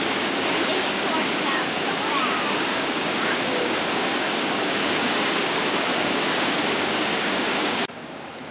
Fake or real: fake